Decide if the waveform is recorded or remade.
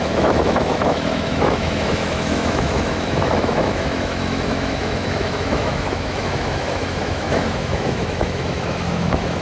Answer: remade